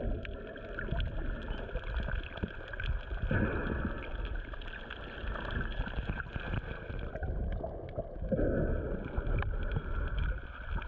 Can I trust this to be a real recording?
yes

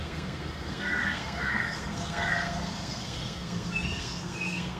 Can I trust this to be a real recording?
no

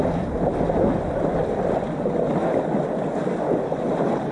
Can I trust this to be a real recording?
yes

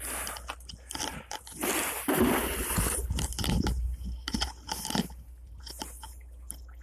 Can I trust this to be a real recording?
yes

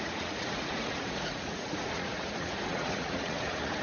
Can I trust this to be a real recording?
no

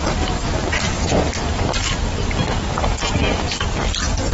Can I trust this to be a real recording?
yes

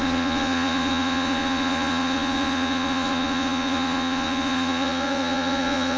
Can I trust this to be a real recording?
no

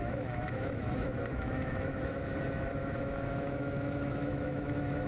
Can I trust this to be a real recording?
no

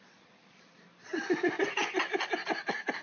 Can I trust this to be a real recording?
yes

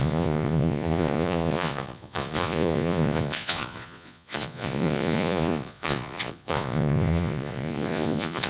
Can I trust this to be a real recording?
no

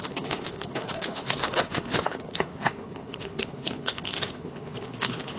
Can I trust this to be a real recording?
no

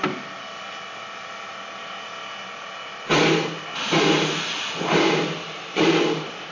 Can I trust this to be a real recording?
yes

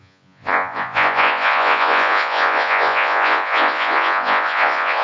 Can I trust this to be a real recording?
no